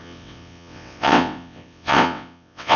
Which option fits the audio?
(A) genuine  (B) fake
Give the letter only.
B